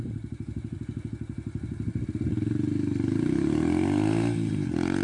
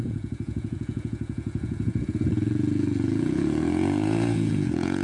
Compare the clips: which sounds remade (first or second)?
second